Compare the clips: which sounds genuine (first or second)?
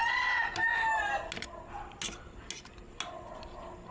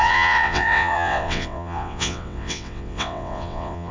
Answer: first